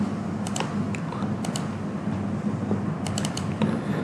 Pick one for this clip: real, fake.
real